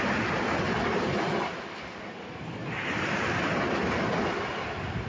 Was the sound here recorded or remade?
recorded